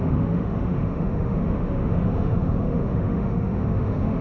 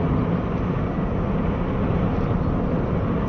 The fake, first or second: first